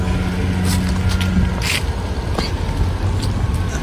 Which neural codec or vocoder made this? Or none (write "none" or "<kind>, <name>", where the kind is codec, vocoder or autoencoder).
none